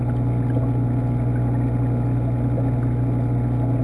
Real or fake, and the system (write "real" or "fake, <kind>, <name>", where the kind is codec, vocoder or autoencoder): real